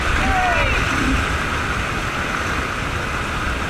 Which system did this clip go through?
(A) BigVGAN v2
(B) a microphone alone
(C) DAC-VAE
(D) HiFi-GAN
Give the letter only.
B